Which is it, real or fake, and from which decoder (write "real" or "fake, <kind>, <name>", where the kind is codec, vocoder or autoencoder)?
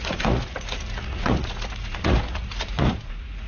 fake, vocoder, Vocos